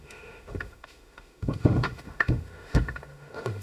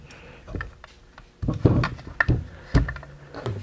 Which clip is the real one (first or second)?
second